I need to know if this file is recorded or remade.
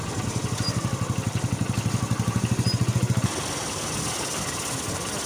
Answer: recorded